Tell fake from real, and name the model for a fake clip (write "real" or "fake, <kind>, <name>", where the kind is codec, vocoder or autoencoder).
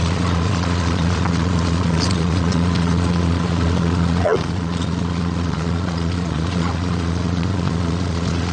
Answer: fake, vocoder, Vocos